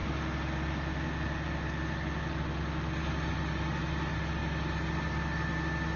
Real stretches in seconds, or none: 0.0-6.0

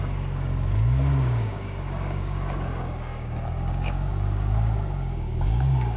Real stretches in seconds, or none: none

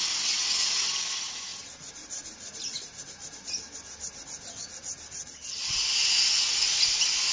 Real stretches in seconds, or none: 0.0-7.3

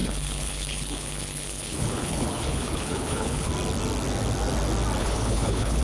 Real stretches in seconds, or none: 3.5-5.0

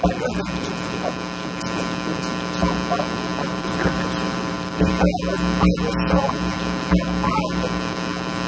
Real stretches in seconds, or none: 0.0-3.4; 4.9-8.5